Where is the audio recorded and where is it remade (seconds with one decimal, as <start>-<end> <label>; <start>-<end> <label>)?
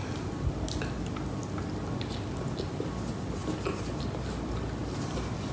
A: 0.0-5.5 recorded